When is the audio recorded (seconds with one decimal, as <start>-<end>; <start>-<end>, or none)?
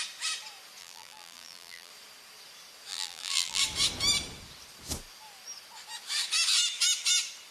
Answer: 0.0-0.8; 1.9-2.9; 3.6-7.5